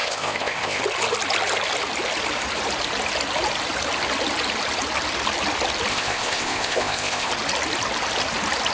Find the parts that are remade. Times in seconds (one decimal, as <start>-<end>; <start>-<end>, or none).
0.0-0.8; 5.9-7.3